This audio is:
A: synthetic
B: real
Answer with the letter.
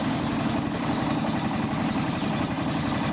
B